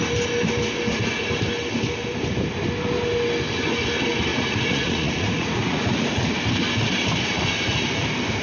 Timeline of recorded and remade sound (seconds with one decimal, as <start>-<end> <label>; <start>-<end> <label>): 0.0-4.3 recorded; 4.3-6.3 remade; 6.3-8.4 recorded